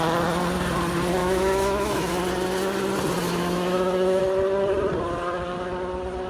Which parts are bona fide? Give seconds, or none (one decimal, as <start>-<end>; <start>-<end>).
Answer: 0.0-1.2; 2.1-3.2; 4.2-6.3